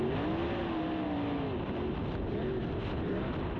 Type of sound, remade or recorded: recorded